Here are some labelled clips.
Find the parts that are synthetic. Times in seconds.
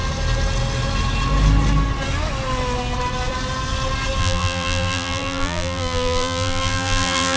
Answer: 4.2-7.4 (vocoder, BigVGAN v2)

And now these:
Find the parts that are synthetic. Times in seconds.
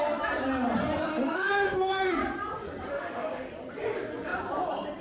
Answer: 1.1-2.2 (autoencoder, DAC-VAE); 2.9-3.5